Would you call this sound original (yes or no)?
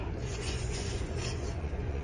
no